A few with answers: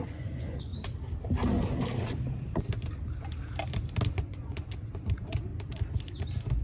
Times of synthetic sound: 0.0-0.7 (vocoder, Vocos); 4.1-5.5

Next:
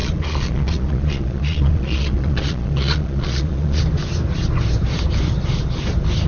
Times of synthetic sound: 0.0-3.8 (vocoder, Vocos)

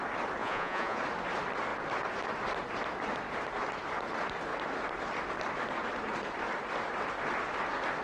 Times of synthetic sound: 0.4-1.0 (vocoder, Vocos)

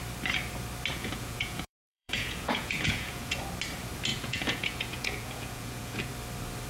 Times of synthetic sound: 0.9-3.4 (vocoder, Vocos); 4.1-6.1

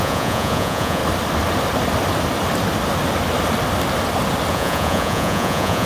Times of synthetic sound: 0.0-1.0 (vocoder, Vocos); 4.5-5.9

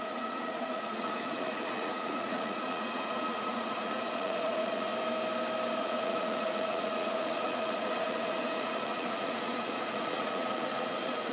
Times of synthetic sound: 0.0-4.9 (vocoder, Vocos); 5.8-11.3

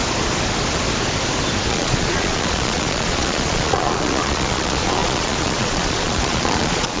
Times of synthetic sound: 1.7-7.0 (vocoder, Vocos)

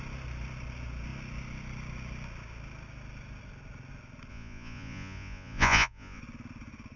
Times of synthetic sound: 4.3-6.2 (vocoder, Vocos)